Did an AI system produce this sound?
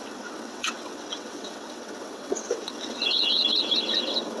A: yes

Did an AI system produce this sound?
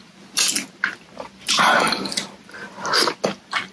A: no